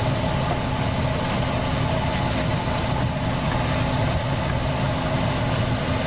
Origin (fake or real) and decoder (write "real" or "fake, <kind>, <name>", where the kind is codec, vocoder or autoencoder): real